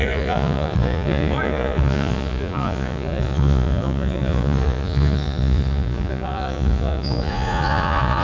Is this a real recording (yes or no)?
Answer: no